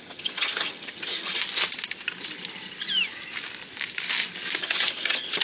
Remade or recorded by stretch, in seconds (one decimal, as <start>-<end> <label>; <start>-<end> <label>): 0.0-1.4 remade; 1.4-4.6 recorded; 4.6-5.4 remade